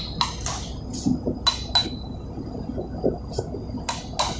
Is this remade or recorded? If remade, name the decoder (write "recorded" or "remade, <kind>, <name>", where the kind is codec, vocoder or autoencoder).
recorded